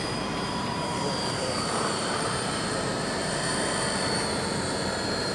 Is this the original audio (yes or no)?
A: no